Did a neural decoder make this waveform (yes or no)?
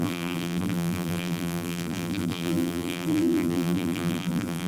yes